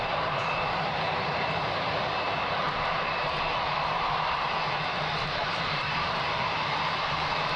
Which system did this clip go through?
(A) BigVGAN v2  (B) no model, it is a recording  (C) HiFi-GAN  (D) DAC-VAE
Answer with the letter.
A